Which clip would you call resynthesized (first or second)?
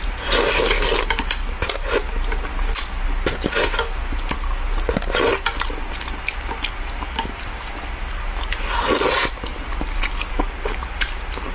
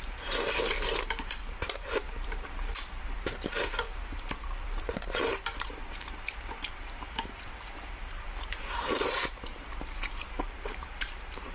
second